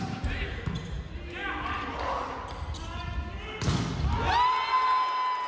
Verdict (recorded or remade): recorded